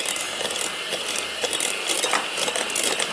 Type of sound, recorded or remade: recorded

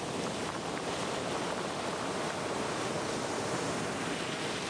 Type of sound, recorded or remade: recorded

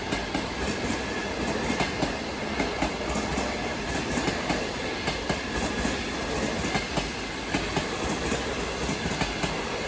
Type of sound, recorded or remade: recorded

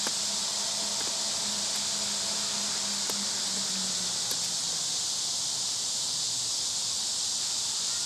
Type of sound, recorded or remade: recorded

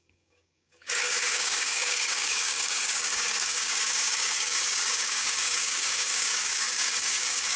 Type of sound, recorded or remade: remade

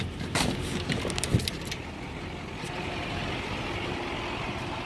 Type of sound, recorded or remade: recorded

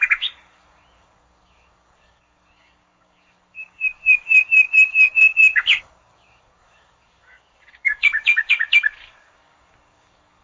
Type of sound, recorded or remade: remade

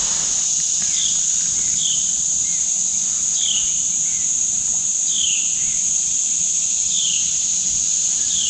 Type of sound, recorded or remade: recorded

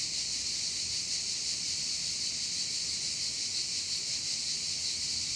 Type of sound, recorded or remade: recorded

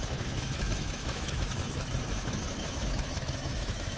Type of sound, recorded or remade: remade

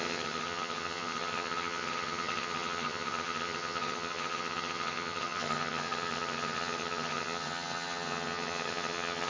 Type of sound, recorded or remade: remade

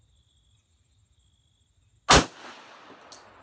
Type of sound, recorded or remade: recorded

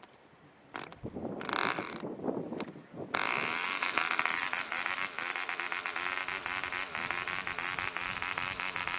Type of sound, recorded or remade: remade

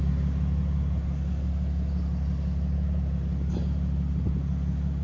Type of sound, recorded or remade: recorded